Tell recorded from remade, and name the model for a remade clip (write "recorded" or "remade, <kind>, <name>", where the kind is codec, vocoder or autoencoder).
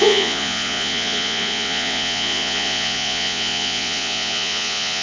remade, vocoder, Vocos